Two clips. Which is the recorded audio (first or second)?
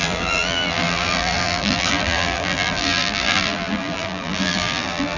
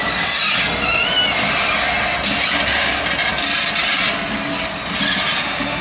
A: second